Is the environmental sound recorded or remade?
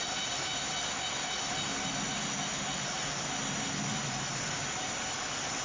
recorded